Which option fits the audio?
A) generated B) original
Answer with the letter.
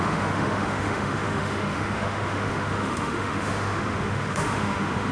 A